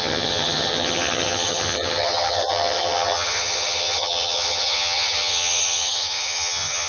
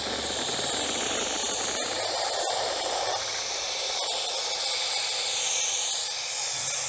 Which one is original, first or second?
second